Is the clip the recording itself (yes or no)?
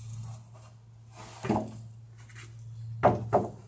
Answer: yes